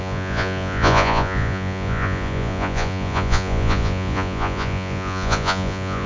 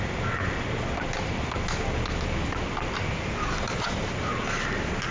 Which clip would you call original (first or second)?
second